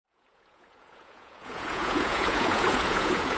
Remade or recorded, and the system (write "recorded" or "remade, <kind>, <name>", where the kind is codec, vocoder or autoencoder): remade, vocoder, Vocos